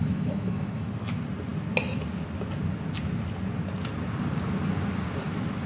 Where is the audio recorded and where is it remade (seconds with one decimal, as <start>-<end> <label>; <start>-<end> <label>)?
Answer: 0.0-0.9 remade; 0.9-5.7 recorded